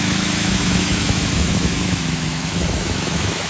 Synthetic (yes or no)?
yes